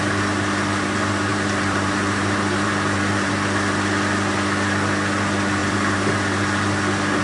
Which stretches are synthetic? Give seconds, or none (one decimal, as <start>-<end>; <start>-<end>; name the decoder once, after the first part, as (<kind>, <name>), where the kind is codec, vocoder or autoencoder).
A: 1.3-3.3 (vocoder, BigVGAN v2); 5.6-6.1